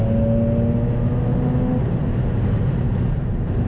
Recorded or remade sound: recorded